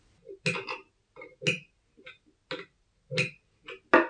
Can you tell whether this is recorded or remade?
recorded